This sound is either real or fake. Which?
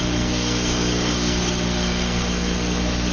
fake